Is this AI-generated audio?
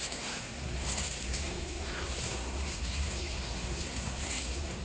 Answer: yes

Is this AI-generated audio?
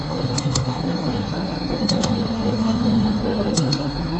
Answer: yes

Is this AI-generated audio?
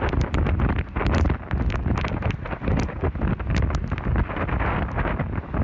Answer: no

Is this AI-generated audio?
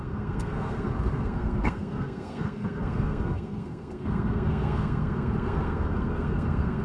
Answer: yes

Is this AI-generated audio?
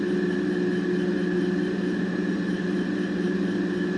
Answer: no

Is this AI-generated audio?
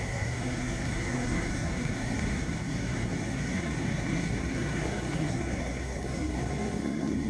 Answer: yes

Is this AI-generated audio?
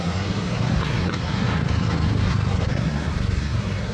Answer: yes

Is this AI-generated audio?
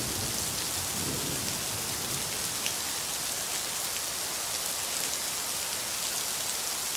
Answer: no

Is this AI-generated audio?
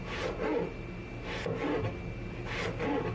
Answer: no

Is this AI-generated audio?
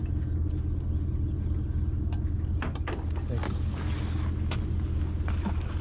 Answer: no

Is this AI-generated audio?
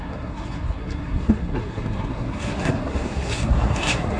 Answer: yes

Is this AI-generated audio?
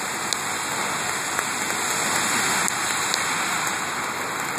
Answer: no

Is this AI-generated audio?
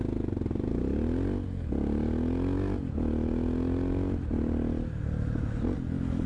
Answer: no